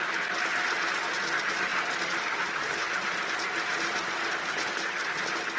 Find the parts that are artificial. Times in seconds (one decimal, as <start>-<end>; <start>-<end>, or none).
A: none